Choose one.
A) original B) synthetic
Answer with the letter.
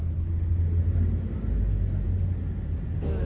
A